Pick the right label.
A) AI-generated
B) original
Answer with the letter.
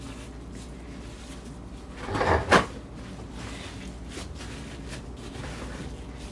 B